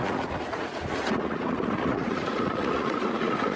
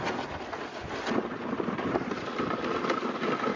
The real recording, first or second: second